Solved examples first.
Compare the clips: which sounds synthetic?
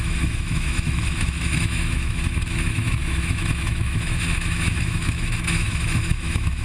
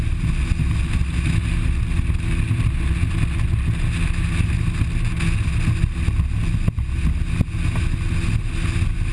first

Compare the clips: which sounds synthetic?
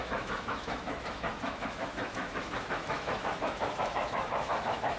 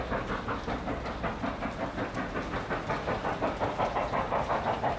first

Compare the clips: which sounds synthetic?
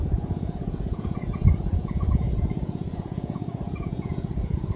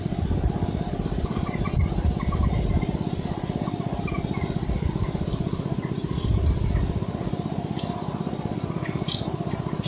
first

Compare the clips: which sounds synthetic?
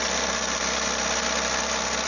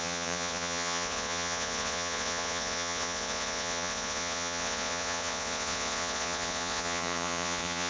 second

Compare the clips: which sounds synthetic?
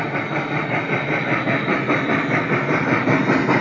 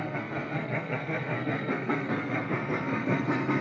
second